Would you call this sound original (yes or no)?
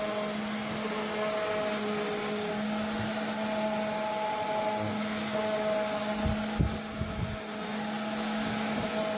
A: yes